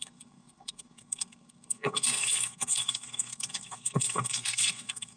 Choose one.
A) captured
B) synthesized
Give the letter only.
B